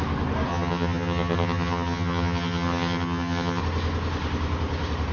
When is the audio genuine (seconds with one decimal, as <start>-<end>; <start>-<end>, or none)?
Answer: 0.0-0.5; 3.6-5.1